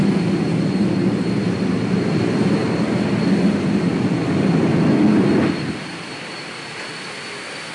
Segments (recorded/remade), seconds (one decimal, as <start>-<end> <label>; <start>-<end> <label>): 0.0-7.7 recorded